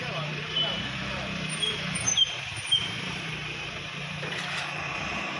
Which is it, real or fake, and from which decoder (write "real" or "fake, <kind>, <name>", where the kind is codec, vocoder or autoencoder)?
fake, vocoder, BigVGAN v2